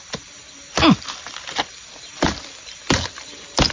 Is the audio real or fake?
real